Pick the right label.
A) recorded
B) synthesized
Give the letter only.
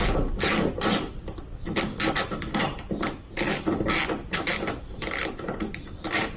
A